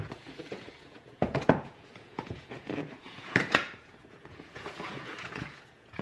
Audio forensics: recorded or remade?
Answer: remade